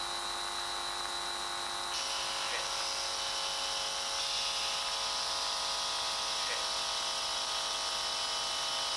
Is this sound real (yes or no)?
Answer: yes